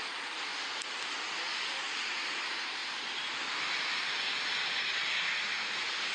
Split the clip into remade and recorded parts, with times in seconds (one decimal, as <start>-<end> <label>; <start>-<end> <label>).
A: 0.0-6.1 recorded